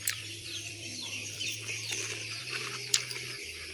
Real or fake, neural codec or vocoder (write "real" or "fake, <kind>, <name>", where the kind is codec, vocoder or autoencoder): fake, vocoder, BigVGAN v2